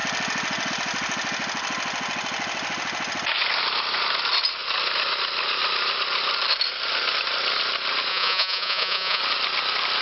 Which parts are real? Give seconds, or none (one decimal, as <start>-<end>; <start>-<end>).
0.0-8.1; 9.2-10.0